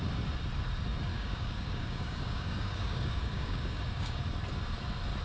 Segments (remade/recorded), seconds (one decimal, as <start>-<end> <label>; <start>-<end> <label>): 0.0-1.1 recorded; 1.1-4.2 remade; 4.2-5.2 recorded